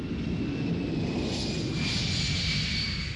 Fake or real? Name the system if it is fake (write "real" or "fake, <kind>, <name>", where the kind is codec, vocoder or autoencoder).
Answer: real